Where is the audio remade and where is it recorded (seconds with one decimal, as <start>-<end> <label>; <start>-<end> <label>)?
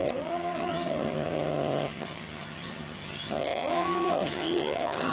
0.0-5.1 remade